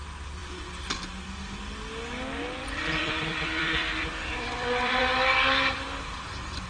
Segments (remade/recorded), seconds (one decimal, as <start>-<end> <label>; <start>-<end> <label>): 0.0-2.6 recorded; 2.6-5.0 remade; 5.0-6.7 recorded